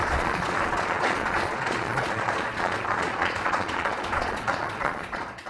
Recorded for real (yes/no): no